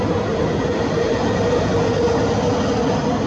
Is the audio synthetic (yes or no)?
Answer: no